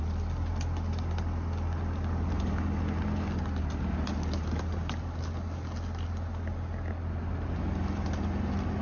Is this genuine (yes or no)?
yes